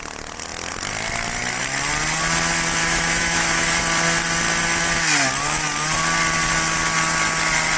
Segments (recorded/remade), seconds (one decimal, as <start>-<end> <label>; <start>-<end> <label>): 0.0-2.8 recorded; 2.8-3.8 remade; 3.8-7.8 recorded